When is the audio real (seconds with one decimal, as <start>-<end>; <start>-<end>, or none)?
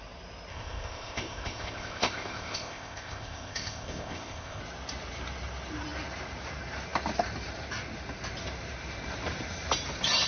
0.0-0.5; 4.6-10.3